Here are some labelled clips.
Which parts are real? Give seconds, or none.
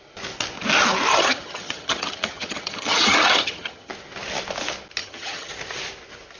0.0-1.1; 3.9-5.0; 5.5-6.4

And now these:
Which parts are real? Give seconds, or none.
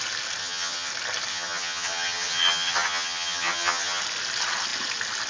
0.0-0.4; 0.9-1.3; 4.0-5.3